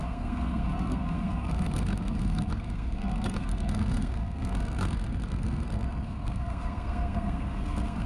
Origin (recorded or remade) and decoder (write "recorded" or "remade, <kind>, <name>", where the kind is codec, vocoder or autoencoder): remade, codec, SNAC